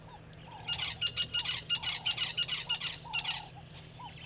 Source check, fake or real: real